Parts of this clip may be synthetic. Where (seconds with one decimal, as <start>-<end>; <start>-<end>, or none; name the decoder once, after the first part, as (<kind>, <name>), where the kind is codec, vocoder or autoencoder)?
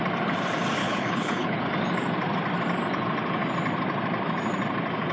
0.8-1.6 (codec, HILCodec)